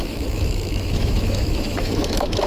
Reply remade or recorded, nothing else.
remade